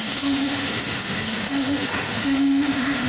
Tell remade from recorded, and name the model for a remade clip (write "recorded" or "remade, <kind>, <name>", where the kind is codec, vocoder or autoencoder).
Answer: remade, autoencoder, DAC-VAE